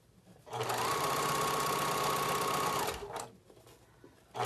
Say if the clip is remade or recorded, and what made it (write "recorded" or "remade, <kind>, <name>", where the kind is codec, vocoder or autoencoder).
recorded